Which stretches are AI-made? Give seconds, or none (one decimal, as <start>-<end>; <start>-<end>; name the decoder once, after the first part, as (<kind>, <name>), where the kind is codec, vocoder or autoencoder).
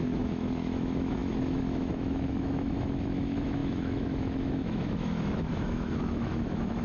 0.0-6.8 (autoencoder, DAC-VAE)